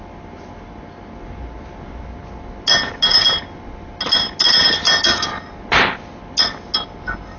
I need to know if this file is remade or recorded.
recorded